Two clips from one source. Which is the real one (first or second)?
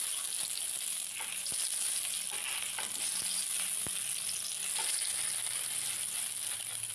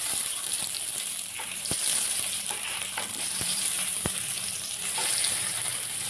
first